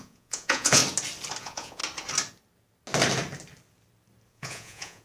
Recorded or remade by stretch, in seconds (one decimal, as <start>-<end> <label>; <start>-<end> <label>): 0.0-0.8 remade; 0.8-1.4 recorded; 1.4-1.8 remade; 1.8-4.3 recorded; 4.3-5.0 remade